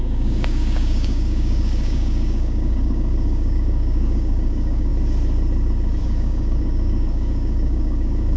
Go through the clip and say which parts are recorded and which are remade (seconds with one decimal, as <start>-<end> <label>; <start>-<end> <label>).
0.0-4.9 remade; 4.9-6.0 recorded; 6.0-8.4 remade